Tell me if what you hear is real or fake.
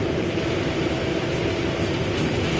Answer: real